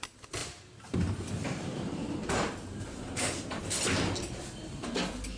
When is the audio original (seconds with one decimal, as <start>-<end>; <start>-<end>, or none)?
0.0-0.4; 3.6-5.4